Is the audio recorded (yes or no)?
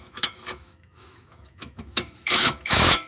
no